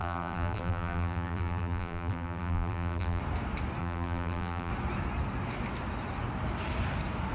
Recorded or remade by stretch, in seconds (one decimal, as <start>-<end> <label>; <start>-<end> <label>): 0.0-3.2 remade; 3.2-3.8 recorded; 3.8-4.7 remade; 4.7-7.3 recorded